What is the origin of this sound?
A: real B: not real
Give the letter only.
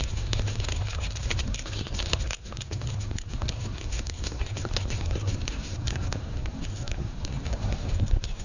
B